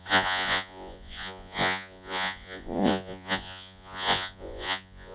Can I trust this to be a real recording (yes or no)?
no